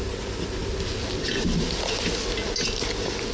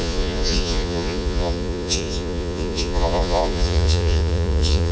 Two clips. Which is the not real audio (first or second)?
second